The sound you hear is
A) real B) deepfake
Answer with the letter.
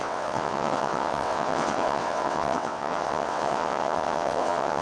B